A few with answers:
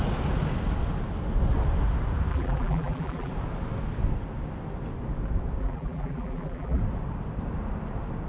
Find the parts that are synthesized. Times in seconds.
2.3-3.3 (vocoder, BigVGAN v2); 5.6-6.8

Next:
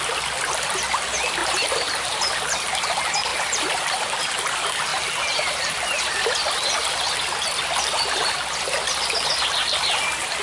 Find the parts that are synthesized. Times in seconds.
1.4-2.3 (vocoder, BigVGAN v2); 3.3-4.2; 4.9-5.7

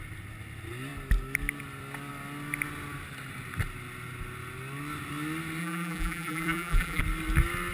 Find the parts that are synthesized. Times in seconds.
5.6-7.0 (vocoder, BigVGAN v2)

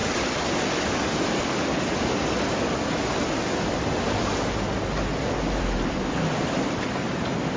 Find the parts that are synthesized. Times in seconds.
none

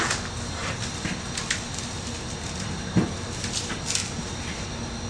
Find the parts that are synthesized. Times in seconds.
0.6-3.7 (vocoder, BigVGAN v2)

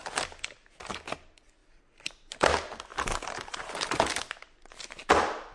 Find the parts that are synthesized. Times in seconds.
2.9-4.1 (vocoder, BigVGAN v2)

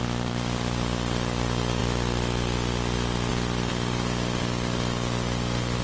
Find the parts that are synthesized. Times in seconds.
0.0-1.8 (vocoder, BigVGAN v2); 3.3-3.7; 4.4-5.8